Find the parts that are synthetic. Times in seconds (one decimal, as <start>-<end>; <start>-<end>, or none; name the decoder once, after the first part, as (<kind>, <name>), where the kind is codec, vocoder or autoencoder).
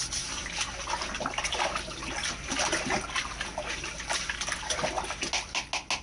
none